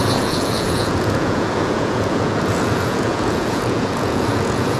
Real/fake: fake